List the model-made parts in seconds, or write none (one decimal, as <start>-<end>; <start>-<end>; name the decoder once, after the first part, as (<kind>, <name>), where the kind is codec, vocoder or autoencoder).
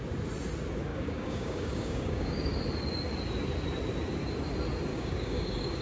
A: 0.9-2.4 (codec, DAC); 4.9-5.8